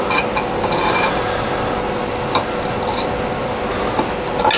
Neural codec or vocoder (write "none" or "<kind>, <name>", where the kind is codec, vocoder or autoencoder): none